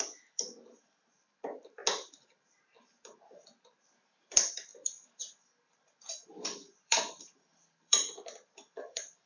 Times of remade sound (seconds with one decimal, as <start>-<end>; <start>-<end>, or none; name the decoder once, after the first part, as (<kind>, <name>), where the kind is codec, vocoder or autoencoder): 0.0-1.8 (vocoder, BigVGAN v2); 3.4-9.3

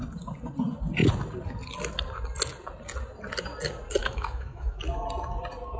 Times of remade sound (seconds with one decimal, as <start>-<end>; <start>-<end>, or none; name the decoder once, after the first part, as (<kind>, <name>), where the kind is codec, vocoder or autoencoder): 4.0-4.8 (autoencoder, DAC-VAE)